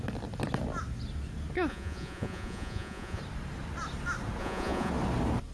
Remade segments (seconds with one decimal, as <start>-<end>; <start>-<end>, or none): 1.7-3.2; 4.4-4.9